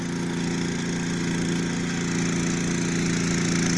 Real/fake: real